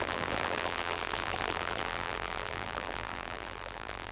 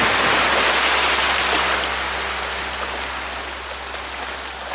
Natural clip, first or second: second